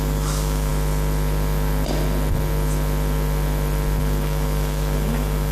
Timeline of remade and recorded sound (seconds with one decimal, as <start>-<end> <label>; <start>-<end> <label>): 0.0-0.7 remade; 0.7-4.0 recorded; 4.0-5.5 remade